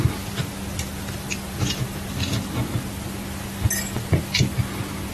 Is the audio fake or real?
real